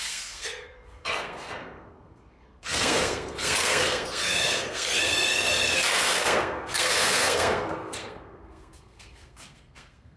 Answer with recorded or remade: remade